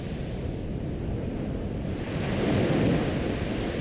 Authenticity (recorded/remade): recorded